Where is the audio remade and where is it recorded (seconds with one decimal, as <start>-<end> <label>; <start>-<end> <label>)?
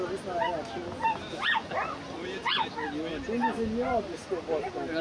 0.0-5.0 recorded